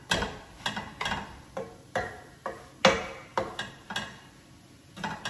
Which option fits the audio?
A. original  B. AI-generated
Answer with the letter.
A